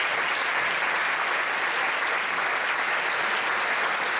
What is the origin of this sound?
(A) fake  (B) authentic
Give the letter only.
B